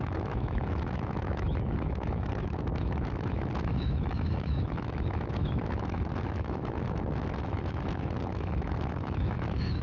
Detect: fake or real fake